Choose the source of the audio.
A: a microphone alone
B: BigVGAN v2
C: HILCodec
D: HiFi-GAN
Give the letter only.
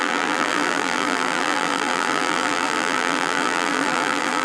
B